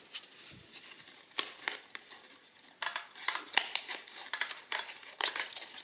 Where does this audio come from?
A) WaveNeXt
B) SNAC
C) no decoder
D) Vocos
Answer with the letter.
C